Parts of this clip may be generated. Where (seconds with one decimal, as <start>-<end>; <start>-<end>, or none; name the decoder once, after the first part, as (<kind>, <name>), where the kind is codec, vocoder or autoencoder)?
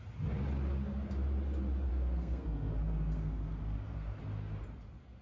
1.9-4.2 (codec, SNAC)